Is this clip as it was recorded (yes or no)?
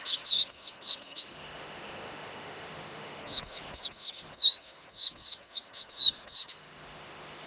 no